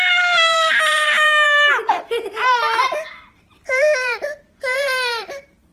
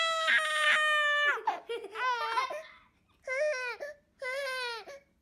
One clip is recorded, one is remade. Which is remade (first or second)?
first